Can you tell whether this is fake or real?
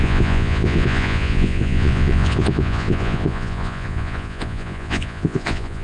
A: fake